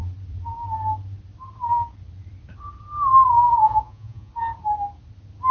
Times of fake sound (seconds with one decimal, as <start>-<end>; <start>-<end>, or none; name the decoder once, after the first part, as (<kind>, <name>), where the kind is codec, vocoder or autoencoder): 3.5-4.3 (vocoder, Vocos)